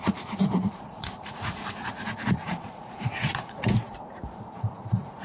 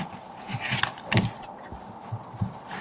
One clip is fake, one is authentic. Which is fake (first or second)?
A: first